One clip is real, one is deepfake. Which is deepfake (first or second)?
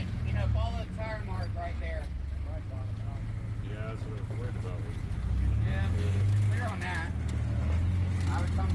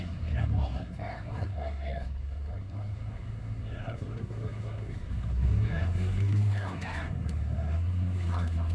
second